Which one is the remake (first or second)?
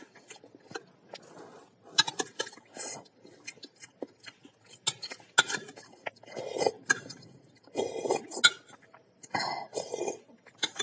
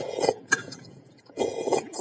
second